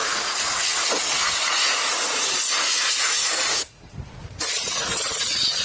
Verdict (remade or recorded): remade